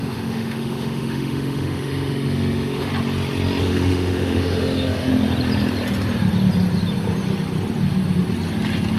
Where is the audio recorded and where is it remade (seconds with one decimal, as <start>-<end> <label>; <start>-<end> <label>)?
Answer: 0.0-2.9 remade; 2.9-3.6 recorded; 3.6-5.1 remade; 5.1-9.0 recorded